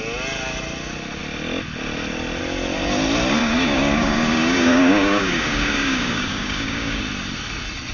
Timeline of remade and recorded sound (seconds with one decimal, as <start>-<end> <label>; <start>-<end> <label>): 0.0-3.4 recorded; 3.4-7.0 remade; 7.0-7.9 recorded